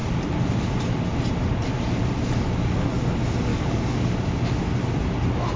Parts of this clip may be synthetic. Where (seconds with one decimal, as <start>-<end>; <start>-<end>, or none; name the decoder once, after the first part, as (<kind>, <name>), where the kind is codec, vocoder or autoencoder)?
3.5-4.1 (codec, DAC)